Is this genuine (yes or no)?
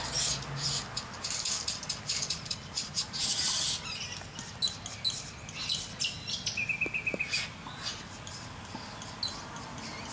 yes